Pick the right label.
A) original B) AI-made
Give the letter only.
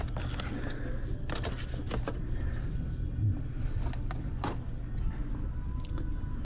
A